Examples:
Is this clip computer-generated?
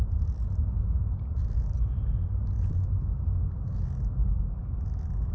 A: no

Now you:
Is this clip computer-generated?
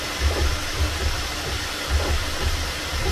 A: no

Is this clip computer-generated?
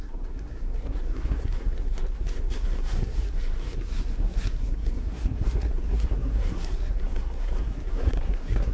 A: yes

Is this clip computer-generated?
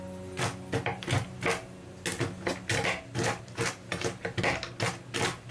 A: no